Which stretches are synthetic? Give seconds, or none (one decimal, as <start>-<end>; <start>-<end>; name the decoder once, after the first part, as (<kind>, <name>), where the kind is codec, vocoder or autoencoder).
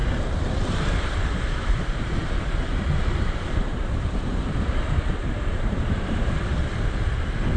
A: 0.0-4.4 (vocoder, BigVGAN v2); 5.2-6.7